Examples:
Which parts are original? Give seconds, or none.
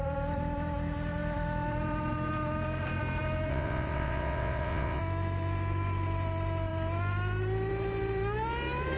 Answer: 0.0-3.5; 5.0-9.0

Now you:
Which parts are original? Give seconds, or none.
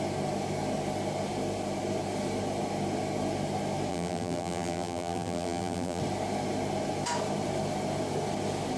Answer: 0.0-3.9; 6.0-8.8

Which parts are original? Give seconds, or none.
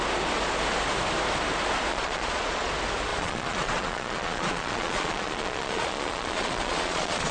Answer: 0.0-1.9; 2.7-3.1